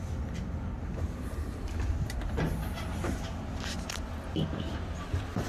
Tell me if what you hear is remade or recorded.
recorded